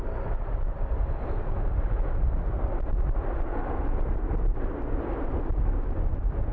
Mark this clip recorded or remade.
recorded